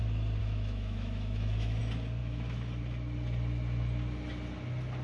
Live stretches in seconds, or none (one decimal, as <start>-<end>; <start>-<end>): 0.0-0.4; 1.8-2.2; 2.8-5.0